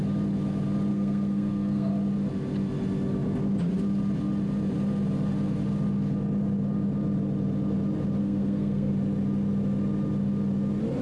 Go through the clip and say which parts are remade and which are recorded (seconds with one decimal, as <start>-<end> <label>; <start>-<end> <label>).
0.0-0.9 recorded; 0.9-1.9 remade; 1.9-8.2 recorded; 8.2-8.9 remade; 8.9-11.0 recorded